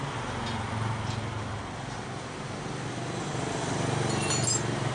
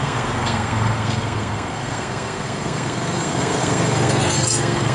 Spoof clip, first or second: second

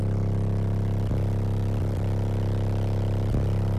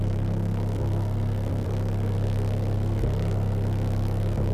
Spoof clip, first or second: second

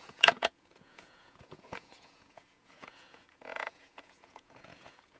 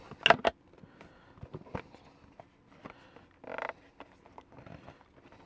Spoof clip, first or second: first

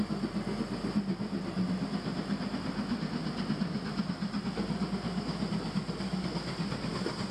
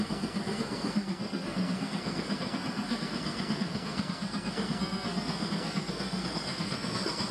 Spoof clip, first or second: second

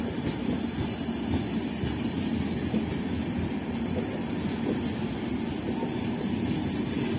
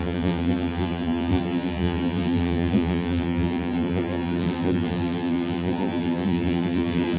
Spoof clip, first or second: second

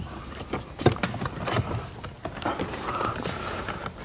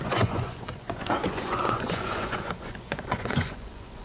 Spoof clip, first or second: second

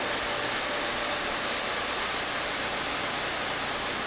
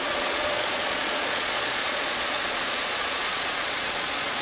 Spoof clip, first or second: second